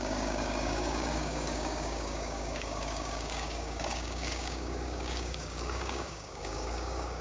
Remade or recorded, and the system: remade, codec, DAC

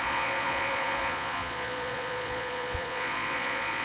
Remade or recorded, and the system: remade, vocoder, Vocos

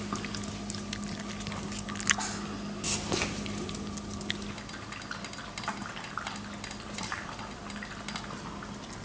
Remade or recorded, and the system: recorded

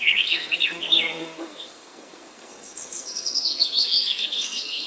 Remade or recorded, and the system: remade, codec, SNAC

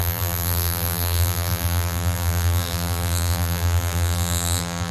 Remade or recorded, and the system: remade, vocoder, BigVGAN v2